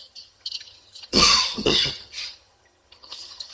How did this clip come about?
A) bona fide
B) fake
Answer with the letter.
B